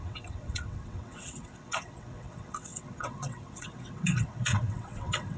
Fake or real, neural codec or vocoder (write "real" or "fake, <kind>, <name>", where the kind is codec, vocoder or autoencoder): fake, vocoder, WaveNeXt